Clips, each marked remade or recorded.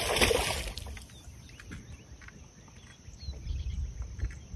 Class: recorded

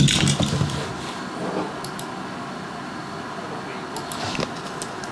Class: recorded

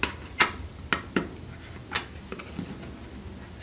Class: recorded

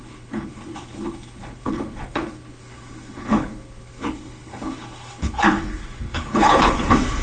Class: remade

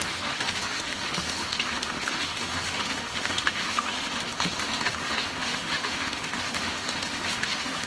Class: remade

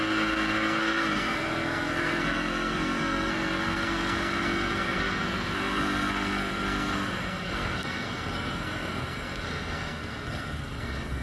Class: remade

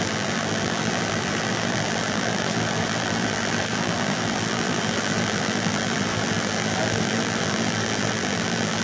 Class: remade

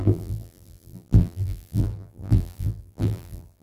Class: remade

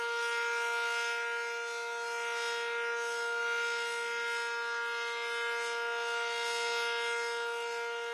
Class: recorded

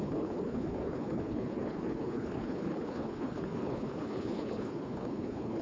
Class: remade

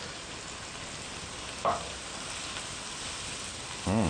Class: recorded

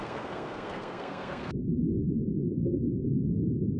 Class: remade